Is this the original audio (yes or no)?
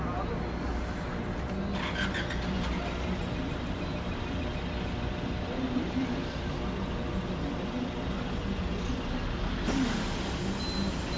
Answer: yes